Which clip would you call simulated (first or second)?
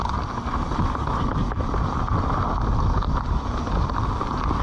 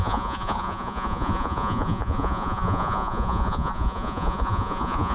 second